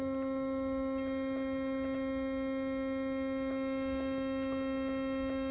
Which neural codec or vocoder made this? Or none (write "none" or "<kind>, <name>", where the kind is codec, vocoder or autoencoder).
none